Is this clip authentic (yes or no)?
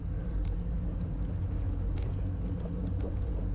yes